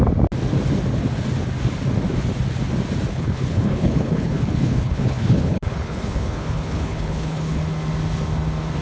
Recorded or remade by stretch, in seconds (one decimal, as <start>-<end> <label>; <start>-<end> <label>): 0.0-3.1 recorded; 3.1-7.6 remade; 7.6-8.8 recorded